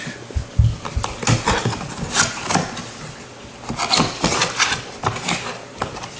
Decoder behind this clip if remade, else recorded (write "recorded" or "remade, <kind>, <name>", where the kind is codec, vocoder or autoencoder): recorded